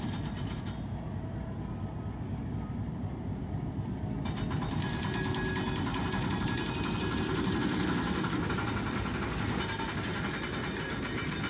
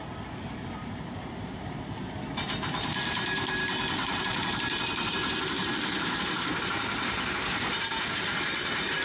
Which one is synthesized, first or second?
second